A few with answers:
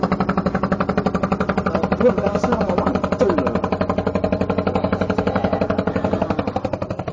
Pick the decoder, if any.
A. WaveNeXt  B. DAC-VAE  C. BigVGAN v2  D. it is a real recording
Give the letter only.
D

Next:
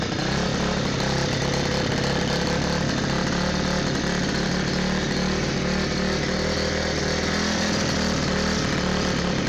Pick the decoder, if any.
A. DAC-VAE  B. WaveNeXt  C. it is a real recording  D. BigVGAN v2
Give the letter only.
C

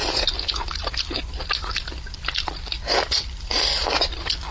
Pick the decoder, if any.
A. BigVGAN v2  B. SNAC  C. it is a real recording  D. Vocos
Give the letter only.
A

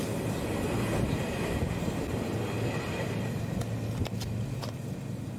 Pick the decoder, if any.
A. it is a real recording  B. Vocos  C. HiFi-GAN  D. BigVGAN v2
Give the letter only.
A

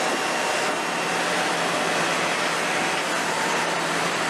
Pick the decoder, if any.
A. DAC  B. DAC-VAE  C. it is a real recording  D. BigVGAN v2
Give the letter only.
C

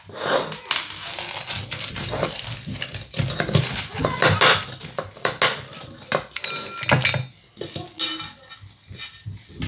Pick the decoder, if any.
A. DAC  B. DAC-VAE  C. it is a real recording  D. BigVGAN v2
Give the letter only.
C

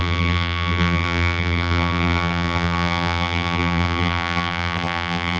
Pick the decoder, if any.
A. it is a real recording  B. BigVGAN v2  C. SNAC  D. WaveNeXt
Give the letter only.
B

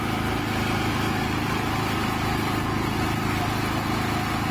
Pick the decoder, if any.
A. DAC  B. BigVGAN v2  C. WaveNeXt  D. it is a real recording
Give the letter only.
D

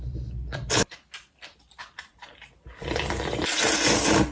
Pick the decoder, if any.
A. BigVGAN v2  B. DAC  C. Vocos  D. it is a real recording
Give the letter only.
A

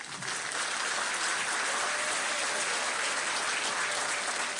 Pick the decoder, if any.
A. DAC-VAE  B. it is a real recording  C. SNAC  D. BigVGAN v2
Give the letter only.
B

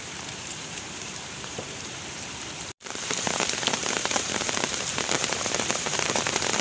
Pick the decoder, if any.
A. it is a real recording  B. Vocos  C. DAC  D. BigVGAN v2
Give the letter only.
D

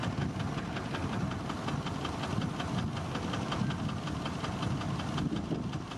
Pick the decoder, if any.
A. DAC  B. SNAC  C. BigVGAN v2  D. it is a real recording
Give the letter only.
D